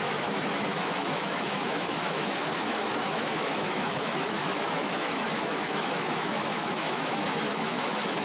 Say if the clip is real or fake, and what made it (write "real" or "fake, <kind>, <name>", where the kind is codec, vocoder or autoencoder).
fake, autoencoder, DAC-VAE